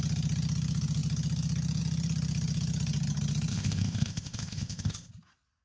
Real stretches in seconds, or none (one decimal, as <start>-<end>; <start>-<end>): 0.0-3.5; 5.1-5.6